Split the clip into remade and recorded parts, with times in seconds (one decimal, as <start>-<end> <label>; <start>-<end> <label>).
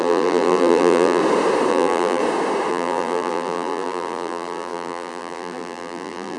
0.0-1.2 remade; 1.2-1.7 recorded; 1.7-2.2 remade; 2.2-2.7 recorded; 2.7-6.4 remade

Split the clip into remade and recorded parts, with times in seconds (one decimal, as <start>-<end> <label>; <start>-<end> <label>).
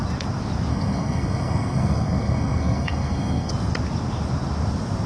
0.0-0.7 recorded; 0.7-3.5 remade; 3.5-5.1 recorded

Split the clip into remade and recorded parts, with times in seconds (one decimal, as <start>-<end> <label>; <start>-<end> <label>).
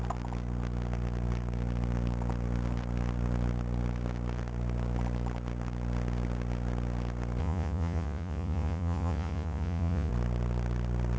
0.0-7.4 recorded; 7.4-10.1 remade; 10.1-11.2 recorded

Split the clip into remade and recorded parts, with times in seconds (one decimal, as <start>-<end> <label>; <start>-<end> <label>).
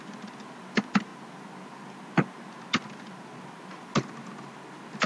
0.0-5.1 recorded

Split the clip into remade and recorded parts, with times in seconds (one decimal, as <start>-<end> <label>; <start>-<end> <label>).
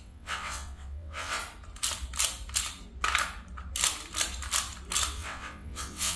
0.0-1.4 remade; 1.4-5.1 recorded; 5.1-6.2 remade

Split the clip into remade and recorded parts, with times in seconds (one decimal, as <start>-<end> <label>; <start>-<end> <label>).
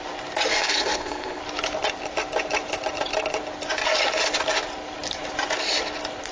0.0-0.5 recorded; 0.5-1.4 remade; 1.4-6.3 recorded